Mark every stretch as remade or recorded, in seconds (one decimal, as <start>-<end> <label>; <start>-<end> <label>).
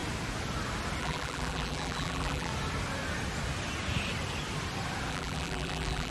0.0-1.0 recorded; 1.0-2.5 remade; 2.5-5.1 recorded; 5.1-6.1 remade